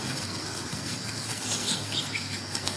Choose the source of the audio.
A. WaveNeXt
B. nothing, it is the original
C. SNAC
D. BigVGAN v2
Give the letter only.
C